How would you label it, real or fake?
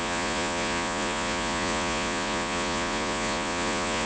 fake